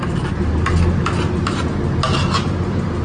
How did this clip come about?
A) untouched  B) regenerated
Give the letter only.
A